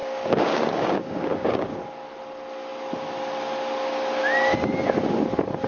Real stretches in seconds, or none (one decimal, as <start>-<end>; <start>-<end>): 1.8-5.7